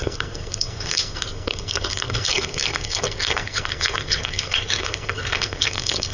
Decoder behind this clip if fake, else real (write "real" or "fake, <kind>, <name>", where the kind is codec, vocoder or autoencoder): fake, codec, SNAC